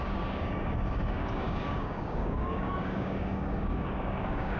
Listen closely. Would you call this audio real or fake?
fake